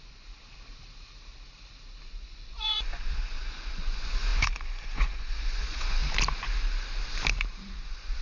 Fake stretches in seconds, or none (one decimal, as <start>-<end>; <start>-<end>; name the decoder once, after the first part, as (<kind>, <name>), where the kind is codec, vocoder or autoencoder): 0.0-0.4 (vocoder, Vocos); 2.1-6.0; 7.7-8.2